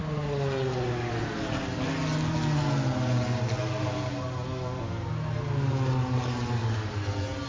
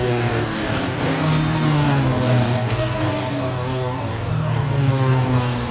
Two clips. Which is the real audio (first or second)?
first